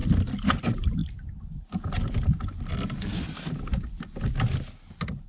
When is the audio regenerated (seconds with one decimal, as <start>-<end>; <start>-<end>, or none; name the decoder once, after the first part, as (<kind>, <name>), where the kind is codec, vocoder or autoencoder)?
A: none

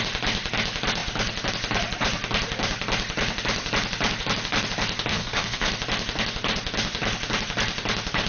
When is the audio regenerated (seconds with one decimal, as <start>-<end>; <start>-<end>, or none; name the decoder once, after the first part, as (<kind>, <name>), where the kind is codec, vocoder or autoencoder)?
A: 5.1-5.7 (codec, SNAC)

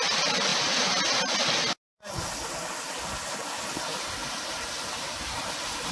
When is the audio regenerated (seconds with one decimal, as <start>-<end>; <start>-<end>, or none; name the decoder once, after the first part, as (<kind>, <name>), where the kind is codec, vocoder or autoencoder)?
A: 4.2-5.2 (vocoder, BigVGAN v2)

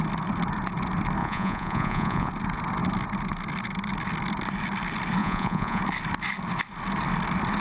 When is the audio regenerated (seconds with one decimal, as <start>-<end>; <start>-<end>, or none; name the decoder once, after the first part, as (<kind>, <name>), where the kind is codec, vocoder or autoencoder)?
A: 1.2-2.3 (vocoder, Vocos); 5.2-5.8

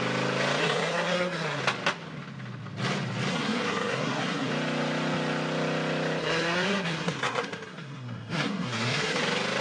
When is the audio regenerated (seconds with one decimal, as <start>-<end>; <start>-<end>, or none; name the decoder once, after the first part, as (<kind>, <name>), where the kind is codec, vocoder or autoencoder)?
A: 0.6-1.6 (codec, SNAC); 3.3-4.5; 6.2-9.2